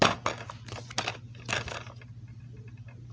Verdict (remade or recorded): recorded